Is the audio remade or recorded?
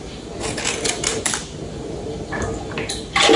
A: recorded